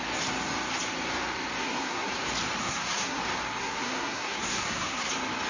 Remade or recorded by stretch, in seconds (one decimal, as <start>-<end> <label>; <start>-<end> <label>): 0.0-1.6 recorded; 1.6-2.1 remade; 2.1-2.6 recorded; 2.6-3.2 remade; 3.2-3.6 recorded; 3.6-5.1 remade; 5.1-5.5 recorded